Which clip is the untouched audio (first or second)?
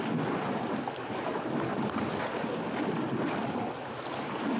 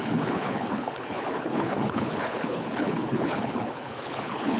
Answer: first